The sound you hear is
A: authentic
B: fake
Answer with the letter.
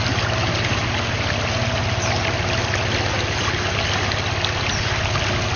A